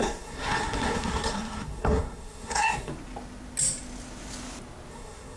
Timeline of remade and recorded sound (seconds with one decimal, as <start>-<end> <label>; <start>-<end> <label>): 0.0-2.9 remade; 2.9-4.9 recorded; 4.9-5.4 remade